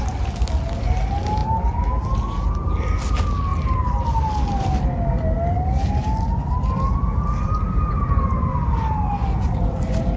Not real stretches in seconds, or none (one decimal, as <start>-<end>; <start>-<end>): none